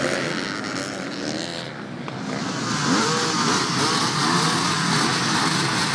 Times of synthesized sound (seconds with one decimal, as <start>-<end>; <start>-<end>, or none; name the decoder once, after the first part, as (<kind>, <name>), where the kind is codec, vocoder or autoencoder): none